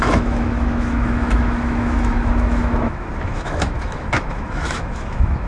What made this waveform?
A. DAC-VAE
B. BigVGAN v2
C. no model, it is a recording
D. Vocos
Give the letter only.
A